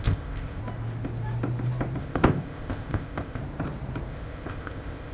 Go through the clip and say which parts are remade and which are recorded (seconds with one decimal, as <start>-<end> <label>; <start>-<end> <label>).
0.0-0.6 remade; 0.6-2.0 recorded; 2.0-3.4 remade; 3.4-4.1 recorded; 4.1-5.1 remade